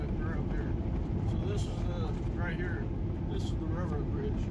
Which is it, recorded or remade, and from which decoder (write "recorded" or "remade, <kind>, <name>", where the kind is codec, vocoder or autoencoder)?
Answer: recorded